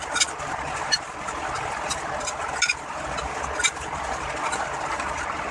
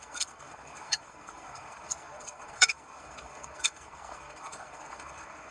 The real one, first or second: first